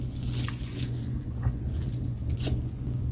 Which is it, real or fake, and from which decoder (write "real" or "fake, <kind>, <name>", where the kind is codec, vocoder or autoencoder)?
fake, vocoder, Vocos